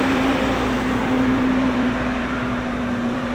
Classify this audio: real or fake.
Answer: fake